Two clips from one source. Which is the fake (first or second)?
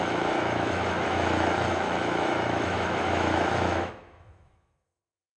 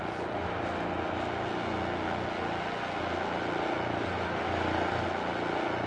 first